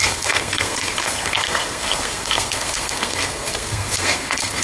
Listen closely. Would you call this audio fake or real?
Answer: fake